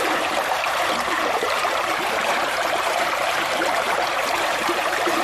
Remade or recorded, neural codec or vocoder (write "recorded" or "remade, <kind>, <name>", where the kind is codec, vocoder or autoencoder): remade, vocoder, BigVGAN v2